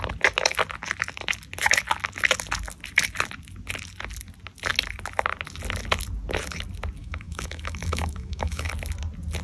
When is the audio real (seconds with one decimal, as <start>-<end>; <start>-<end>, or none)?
0.0-7.0; 8.7-9.4